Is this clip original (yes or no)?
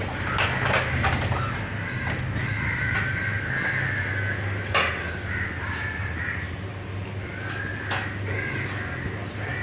yes